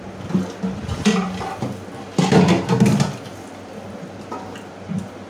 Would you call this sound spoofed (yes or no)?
no